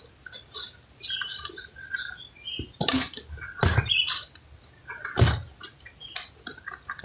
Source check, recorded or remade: recorded